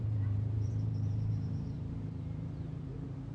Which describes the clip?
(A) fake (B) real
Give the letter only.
A